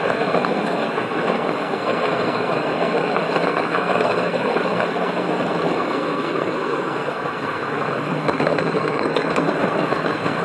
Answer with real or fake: fake